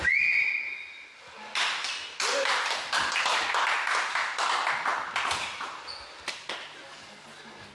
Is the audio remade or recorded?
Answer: recorded